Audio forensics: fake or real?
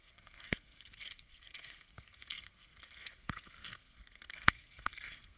fake